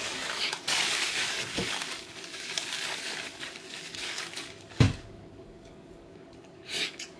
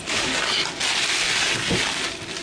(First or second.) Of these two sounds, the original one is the second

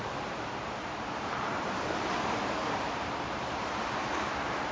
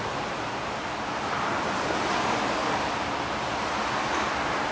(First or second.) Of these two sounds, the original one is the second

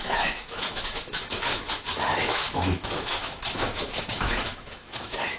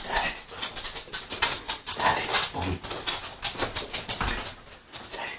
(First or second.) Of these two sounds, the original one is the second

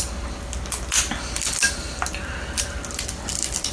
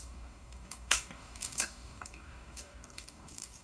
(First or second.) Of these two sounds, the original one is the first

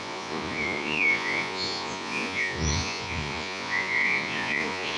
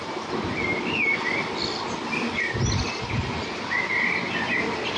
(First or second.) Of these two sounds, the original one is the second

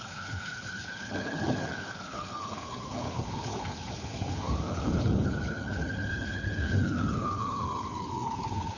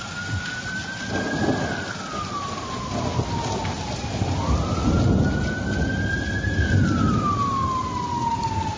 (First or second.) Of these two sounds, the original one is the second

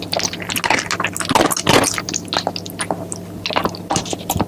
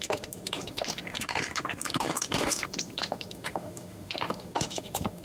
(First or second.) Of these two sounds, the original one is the first